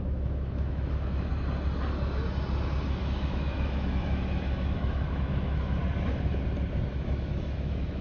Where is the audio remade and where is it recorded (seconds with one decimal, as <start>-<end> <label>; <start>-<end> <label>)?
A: 0.0-1.3 remade; 1.3-3.0 recorded; 3.0-5.8 remade; 5.8-6.9 recorded; 6.9-8.0 remade